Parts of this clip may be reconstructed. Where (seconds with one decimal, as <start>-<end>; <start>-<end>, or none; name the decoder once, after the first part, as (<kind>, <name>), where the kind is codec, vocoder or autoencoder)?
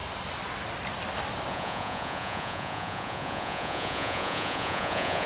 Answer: 1.5-5.3 (vocoder, Vocos)